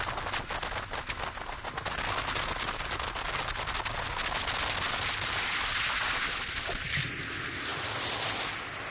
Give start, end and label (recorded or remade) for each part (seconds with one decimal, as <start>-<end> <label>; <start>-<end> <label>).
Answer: 0.0-8.9 recorded